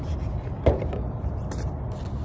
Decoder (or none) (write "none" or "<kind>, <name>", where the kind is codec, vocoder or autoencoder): none